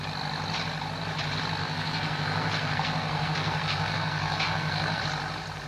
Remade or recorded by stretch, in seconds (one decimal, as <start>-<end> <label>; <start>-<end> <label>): 0.0-1.6 recorded; 1.6-5.0 remade; 5.0-5.7 recorded